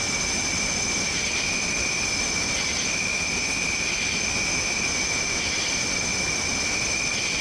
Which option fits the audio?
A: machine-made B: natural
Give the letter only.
B